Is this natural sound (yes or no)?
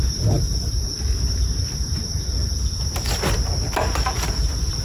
yes